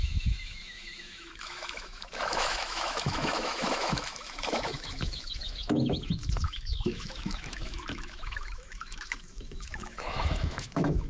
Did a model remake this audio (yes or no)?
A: yes